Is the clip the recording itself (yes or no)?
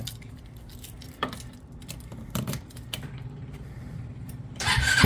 no